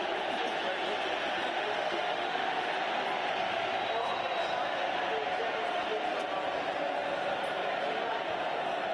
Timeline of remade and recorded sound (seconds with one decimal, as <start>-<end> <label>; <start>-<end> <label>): 0.0-1.6 recorded; 1.6-2.7 remade; 2.7-8.9 recorded